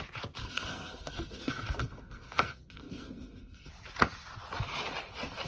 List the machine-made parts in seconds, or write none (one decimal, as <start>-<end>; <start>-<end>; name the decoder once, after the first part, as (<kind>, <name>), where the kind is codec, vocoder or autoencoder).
0.4-3.7 (codec, SNAC)